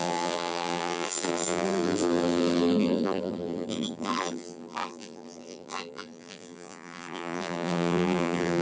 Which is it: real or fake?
fake